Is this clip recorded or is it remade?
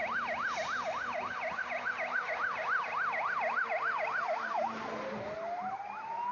recorded